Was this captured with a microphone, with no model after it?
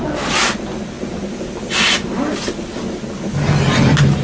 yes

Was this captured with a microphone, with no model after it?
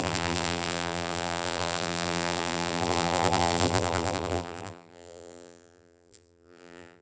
no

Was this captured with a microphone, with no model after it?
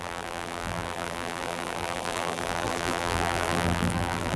no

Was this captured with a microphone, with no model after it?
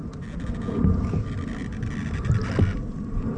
yes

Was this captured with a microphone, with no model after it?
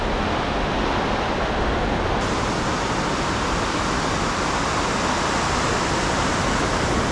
yes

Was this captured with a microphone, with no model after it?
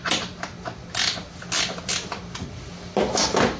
yes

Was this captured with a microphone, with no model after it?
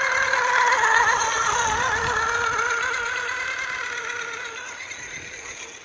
yes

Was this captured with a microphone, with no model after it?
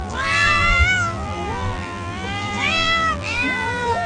no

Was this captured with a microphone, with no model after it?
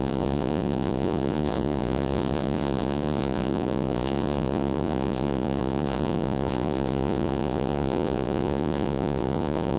no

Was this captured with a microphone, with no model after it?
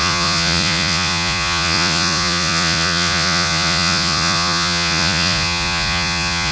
no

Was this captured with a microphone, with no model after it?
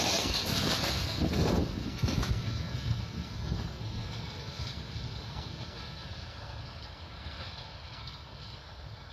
no